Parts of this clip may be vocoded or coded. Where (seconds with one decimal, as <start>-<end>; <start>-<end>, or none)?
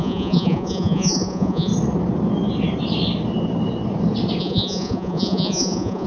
0.0-1.7; 4.4-6.1